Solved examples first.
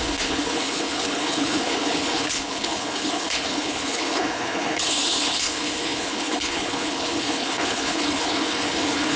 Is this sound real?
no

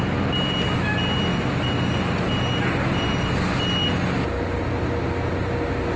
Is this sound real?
yes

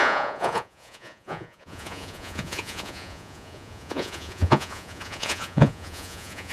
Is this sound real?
no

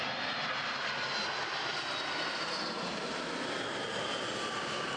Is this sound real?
yes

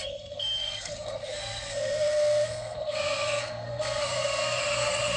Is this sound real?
no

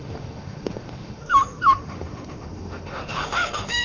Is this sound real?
no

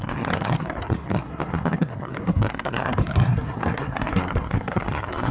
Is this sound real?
no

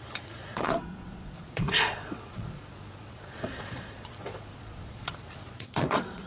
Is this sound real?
no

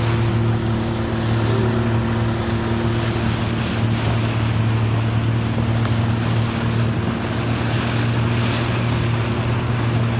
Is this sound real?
yes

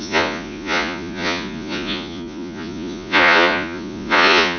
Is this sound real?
no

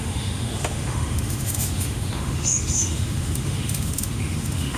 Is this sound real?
no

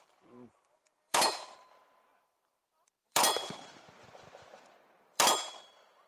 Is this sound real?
no